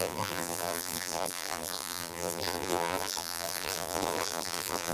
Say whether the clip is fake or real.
fake